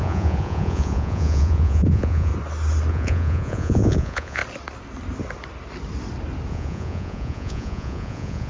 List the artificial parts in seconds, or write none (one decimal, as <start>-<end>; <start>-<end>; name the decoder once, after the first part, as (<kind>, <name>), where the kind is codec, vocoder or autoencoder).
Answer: 0.0-2.3 (vocoder, Vocos); 2.9-4.4; 6.5-8.5